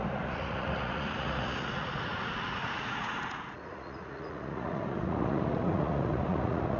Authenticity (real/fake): fake